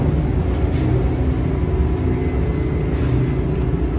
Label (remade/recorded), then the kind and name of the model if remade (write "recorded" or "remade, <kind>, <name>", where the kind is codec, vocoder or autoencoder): recorded